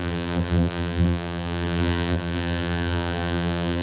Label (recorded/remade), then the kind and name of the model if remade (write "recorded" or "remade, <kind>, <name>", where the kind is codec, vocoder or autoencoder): remade, vocoder, BigVGAN v2